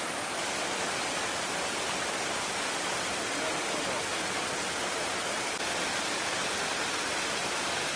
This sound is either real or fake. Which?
real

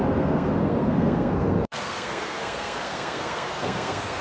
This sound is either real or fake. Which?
fake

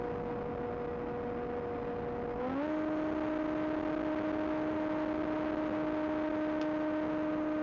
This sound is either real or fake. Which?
real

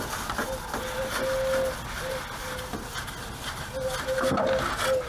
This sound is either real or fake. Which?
real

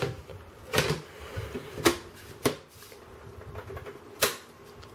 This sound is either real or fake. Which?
real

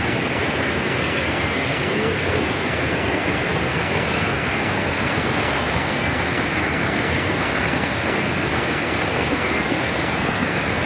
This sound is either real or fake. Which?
fake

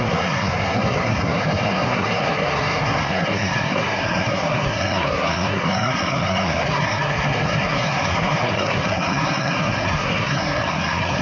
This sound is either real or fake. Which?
fake